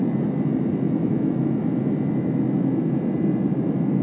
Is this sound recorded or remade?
recorded